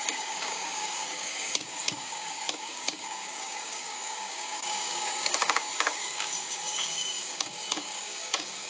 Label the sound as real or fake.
fake